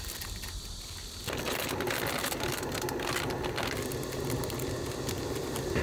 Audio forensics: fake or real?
real